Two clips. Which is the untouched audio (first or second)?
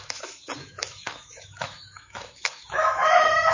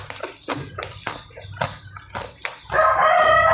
second